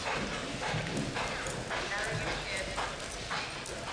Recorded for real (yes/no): yes